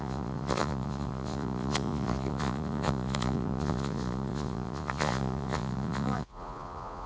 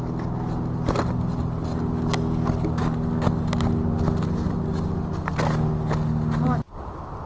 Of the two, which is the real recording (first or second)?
second